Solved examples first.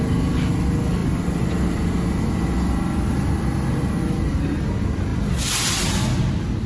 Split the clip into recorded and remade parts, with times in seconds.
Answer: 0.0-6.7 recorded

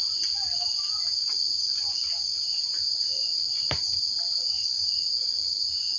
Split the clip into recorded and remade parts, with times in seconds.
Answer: 0.0-6.0 recorded